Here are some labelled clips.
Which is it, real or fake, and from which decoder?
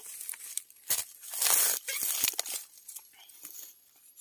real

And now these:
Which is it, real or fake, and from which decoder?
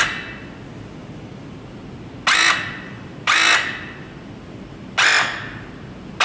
real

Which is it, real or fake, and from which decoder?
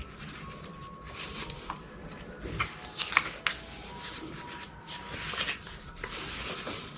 real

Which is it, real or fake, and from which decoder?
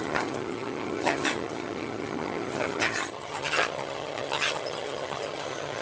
fake, vocoder, HiFi-GAN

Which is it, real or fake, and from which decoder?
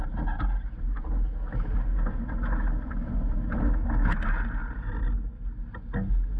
real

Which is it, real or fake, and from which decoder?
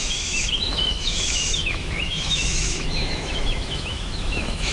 fake, autoencoder, DAC-VAE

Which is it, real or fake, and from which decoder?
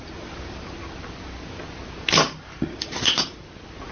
real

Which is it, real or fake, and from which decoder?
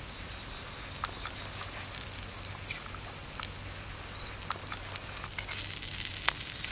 real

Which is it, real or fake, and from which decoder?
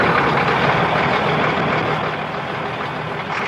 real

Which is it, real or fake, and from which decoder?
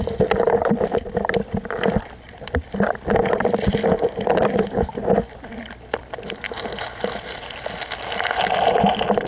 fake, vocoder, BigVGAN v2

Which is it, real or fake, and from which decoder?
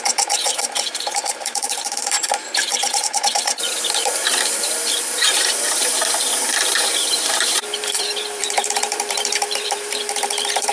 fake, vocoder, BigVGAN v2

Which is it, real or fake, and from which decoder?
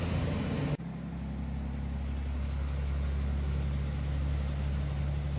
real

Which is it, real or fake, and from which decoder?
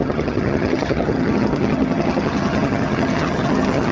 fake, vocoder, HiFi-GAN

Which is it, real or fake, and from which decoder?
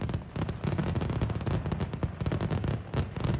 real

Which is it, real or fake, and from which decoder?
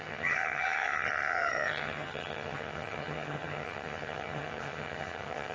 fake, vocoder, HiFi-GAN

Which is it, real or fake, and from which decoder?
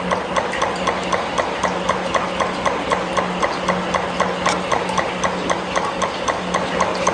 real